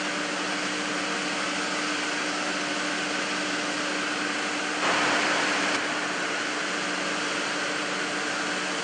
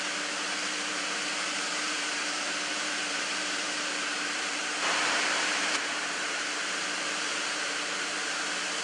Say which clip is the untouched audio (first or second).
first